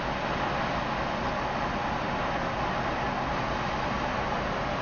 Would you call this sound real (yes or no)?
yes